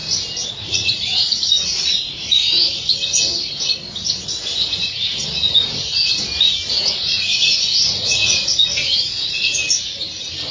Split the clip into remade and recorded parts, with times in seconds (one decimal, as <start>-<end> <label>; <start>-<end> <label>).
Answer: 0.0-0.5 recorded; 0.5-2.4 remade; 2.4-6.7 recorded; 6.7-9.6 remade; 9.6-10.5 recorded